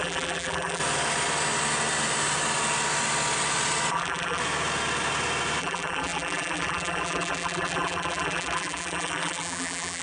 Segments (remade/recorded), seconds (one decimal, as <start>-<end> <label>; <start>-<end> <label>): 0.0-0.8 remade; 0.8-3.9 recorded; 3.9-4.4 remade; 4.4-5.6 recorded; 5.6-10.0 remade